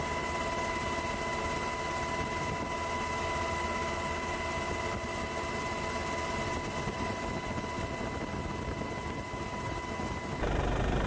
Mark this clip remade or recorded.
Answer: recorded